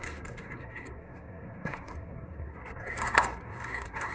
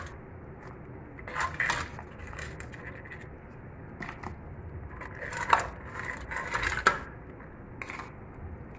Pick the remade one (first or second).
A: first